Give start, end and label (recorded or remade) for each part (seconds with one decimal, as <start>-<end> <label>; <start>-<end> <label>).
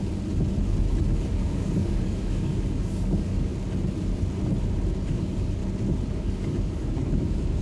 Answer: 0.0-1.3 recorded; 1.3-3.5 remade; 3.5-5.1 recorded; 5.1-5.6 remade; 5.6-6.1 recorded; 6.1-7.6 remade